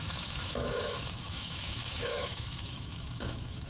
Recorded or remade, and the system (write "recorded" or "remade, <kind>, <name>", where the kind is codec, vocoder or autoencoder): remade, autoencoder, DAC-VAE